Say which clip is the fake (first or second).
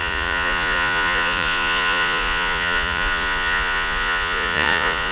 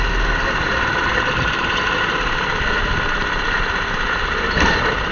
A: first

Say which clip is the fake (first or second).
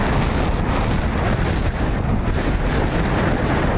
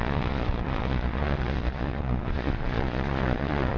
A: second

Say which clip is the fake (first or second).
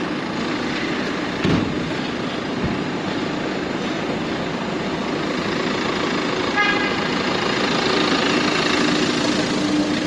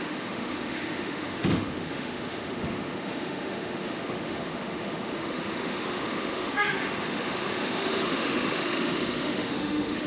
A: second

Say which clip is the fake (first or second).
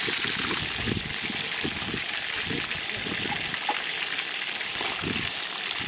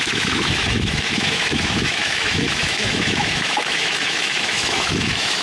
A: second